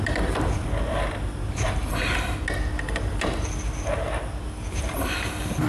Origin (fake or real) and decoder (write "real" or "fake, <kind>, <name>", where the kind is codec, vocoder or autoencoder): real